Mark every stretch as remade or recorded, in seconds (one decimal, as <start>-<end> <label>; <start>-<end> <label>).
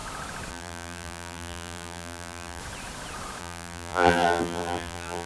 0.0-0.5 recorded; 0.5-2.6 remade; 2.6-3.4 recorded; 3.4-5.3 remade